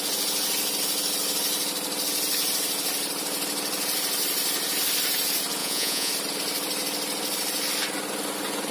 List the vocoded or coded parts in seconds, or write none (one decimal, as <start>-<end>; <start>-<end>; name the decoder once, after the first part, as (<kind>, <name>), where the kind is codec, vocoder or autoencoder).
5.6-6.1 (vocoder, Vocos)